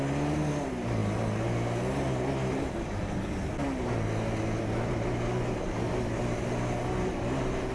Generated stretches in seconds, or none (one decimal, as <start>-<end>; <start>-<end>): none